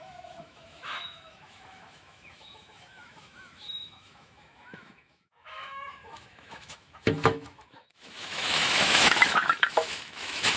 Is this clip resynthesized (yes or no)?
yes